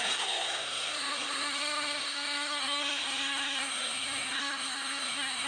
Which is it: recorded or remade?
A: remade